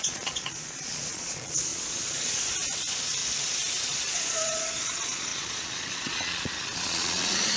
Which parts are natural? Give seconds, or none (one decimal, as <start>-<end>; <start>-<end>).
3.2-3.8